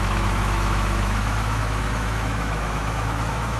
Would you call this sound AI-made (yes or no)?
yes